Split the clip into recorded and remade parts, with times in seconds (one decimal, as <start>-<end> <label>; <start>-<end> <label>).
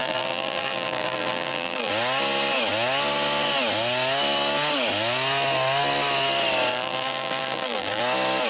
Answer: 0.0-1.9 remade; 1.9-6.7 recorded; 6.7-8.0 remade; 8.0-8.5 recorded